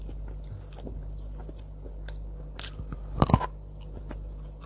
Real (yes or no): yes